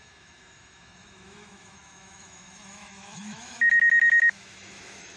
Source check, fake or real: fake